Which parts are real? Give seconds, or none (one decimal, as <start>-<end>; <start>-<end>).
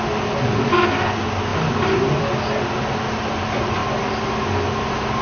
0.0-5.2